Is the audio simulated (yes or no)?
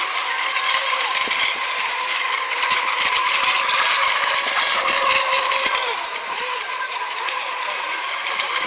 yes